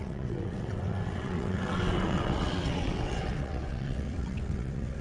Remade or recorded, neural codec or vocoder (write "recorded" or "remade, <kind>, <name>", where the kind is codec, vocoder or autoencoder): remade, vocoder, WaveNeXt